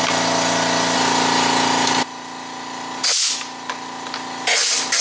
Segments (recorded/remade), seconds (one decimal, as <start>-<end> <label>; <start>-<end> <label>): 0.0-5.0 recorded